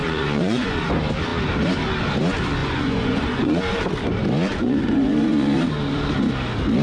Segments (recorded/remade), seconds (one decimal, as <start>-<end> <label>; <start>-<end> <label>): 0.0-0.9 remade; 0.9-2.6 recorded; 2.6-3.6 remade; 3.6-4.5 recorded; 4.5-5.6 remade; 5.6-6.8 recorded